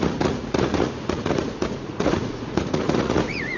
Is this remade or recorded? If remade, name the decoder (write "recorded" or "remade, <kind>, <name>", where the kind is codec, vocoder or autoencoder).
remade, vocoder, Vocos